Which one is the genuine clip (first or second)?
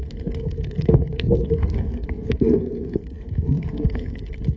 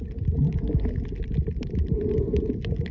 second